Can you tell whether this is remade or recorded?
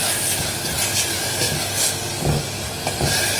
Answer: recorded